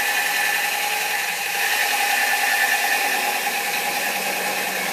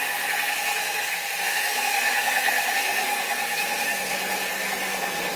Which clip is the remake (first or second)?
second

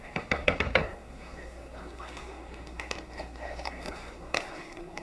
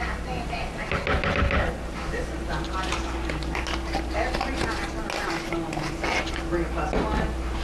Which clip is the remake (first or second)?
first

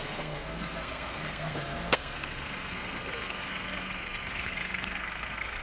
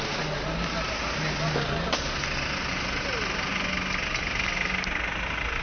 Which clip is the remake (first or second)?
first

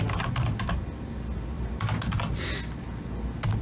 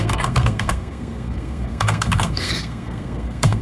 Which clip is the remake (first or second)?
second